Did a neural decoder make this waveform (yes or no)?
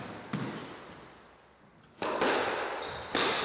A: no